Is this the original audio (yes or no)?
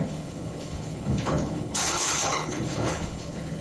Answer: no